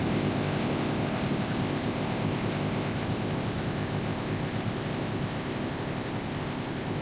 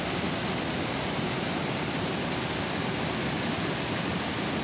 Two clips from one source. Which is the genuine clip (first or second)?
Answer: second